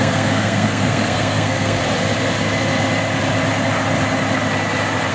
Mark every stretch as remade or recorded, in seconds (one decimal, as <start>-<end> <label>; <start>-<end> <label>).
0.0-1.8 remade; 1.8-5.1 recorded